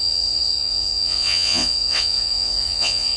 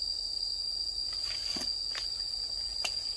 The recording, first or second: second